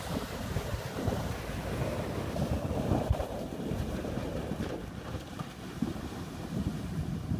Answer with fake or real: fake